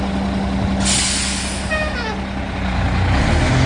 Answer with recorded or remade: recorded